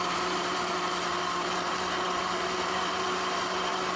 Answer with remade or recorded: recorded